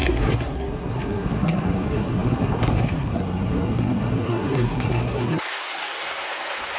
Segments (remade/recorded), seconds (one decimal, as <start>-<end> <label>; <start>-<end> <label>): 0.0-6.8 remade

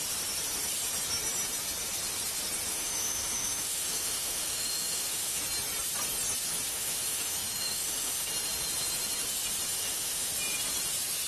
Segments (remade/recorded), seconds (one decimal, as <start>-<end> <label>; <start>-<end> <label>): 0.0-2.7 recorded; 2.7-5.4 remade; 5.4-6.7 recorded; 6.7-8.3 remade; 8.3-9.7 recorded; 9.7-10.3 remade; 10.3-11.3 recorded

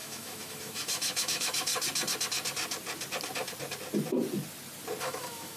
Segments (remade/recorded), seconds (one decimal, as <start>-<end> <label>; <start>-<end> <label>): 0.0-1.7 remade; 1.7-5.0 recorded; 5.0-5.6 remade

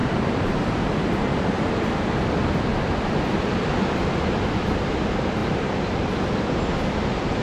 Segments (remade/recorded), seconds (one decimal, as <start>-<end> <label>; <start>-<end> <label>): 0.0-1.0 remade; 1.0-5.4 recorded; 5.4-6.1 remade; 6.1-7.4 recorded

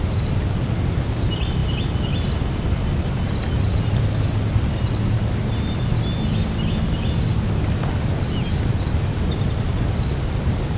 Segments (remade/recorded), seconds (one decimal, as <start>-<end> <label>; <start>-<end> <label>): 0.0-10.8 recorded

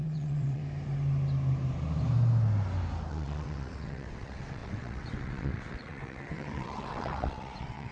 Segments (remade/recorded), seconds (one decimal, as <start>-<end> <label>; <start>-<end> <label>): 0.0-0.6 remade; 0.6-3.1 recorded; 3.1-7.9 remade